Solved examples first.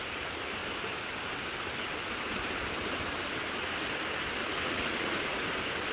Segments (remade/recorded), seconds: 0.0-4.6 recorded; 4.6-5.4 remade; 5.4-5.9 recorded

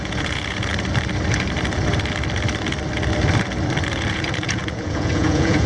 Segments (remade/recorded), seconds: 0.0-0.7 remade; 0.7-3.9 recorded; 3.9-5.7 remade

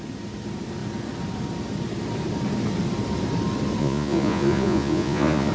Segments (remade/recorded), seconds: 0.0-3.8 recorded; 3.8-5.5 remade

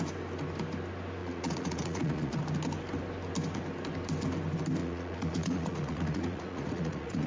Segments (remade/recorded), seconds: 0.0-1.2 recorded; 1.2-2.4 remade; 2.4-4.8 recorded; 4.8-7.3 remade